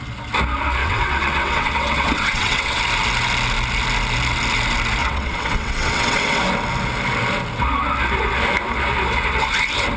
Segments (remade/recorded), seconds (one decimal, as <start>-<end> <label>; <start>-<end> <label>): 0.0-0.8 recorded; 0.8-2.8 remade; 2.8-5.0 recorded; 5.0-6.4 remade; 6.4-10.0 recorded